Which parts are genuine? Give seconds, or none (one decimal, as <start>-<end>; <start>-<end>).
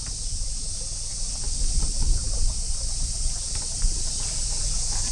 0.0-5.1